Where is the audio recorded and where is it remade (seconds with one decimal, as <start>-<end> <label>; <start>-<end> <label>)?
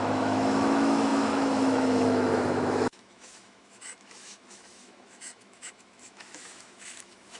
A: 0.0-7.4 remade